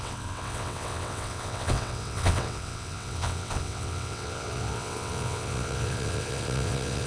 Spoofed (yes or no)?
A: yes